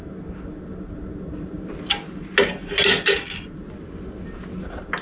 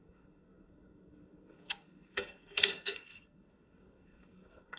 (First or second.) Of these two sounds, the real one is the first